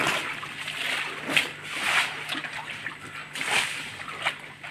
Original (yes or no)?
no